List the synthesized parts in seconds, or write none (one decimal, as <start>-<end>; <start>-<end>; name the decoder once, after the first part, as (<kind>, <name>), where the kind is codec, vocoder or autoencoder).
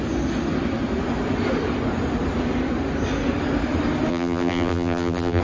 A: 4.1-5.4 (vocoder, BigVGAN v2)